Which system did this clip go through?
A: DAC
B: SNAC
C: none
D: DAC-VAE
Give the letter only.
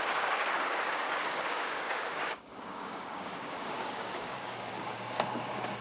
A